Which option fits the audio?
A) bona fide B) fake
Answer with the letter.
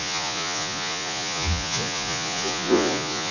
B